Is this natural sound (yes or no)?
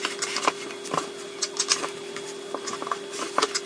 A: yes